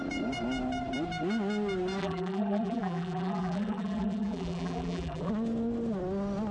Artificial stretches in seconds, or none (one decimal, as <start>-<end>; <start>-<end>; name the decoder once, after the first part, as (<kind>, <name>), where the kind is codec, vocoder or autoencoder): 2.0-5.3 (vocoder, BigVGAN v2)